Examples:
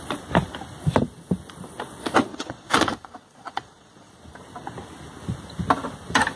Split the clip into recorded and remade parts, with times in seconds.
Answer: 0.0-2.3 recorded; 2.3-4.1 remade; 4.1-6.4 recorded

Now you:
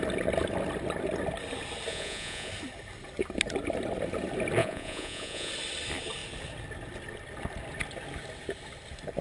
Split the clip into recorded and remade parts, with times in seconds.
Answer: 0.0-1.9 recorded; 1.9-2.5 remade; 2.5-4.6 recorded; 4.6-5.5 remade; 5.5-9.2 recorded

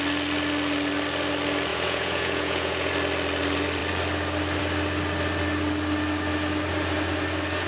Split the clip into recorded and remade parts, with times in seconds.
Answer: 0.0-1.7 recorded; 1.7-2.9 remade; 2.9-7.7 recorded

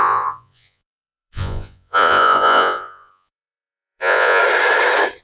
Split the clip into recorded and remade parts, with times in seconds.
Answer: 0.0-4.4 remade; 4.4-5.2 recorded

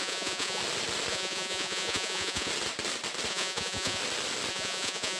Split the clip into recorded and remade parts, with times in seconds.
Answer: 0.0-0.6 remade; 0.6-1.1 recorded; 1.1-2.5 remade; 2.5-3.3 recorded; 3.3-4.0 remade; 4.0-4.5 recorded; 4.5-5.2 remade

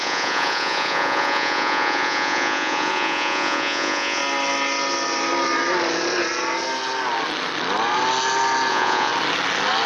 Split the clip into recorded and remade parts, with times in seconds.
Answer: 0.0-4.2 remade; 4.2-8.7 recorded; 8.7-9.1 remade; 9.1-9.9 recorded

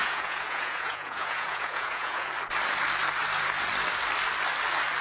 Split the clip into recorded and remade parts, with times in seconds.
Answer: 0.0-2.3 remade; 2.3-5.0 recorded

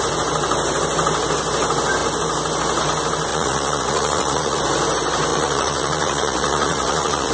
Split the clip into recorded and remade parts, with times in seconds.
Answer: 0.0-3.3 recorded; 3.3-4.6 remade; 4.6-5.3 recorded; 5.3-7.3 remade